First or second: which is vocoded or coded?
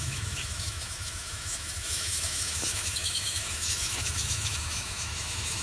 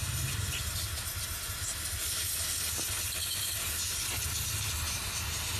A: first